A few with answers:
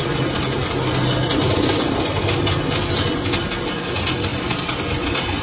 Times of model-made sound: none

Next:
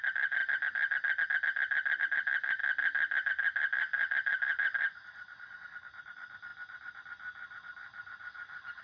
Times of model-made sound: 0.0-0.4 (vocoder, BigVGAN v2); 2.0-2.6; 3.3-8.8

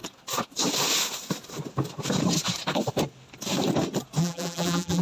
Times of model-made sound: 4.2-5.0 (vocoder, BigVGAN v2)

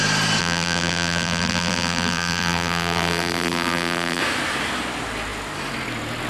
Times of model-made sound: 0.4-4.2 (vocoder, BigVGAN v2)